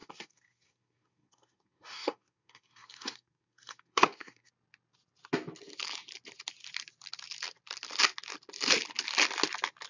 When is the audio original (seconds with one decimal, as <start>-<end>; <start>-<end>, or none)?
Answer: 4.5-9.9